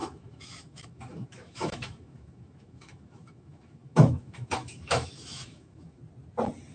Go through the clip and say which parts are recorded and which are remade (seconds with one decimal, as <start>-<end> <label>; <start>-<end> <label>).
0.0-6.0 remade; 6.0-6.7 recorded